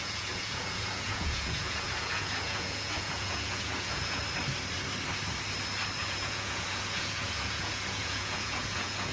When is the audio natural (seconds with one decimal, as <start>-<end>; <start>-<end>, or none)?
4.2-6.0